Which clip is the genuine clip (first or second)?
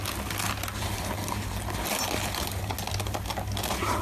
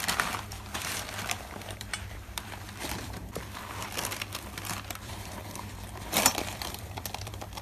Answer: first